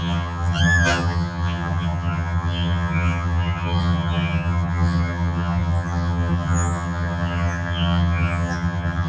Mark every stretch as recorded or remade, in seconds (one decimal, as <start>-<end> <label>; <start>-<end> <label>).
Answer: 0.0-9.1 remade